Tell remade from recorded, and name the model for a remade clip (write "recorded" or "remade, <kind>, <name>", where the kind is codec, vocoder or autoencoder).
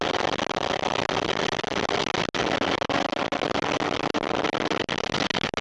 recorded